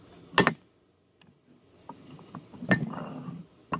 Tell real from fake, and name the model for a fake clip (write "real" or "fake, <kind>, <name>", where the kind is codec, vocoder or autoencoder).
real